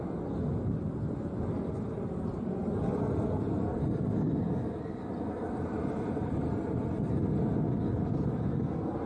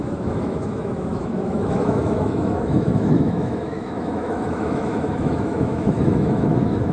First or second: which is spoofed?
second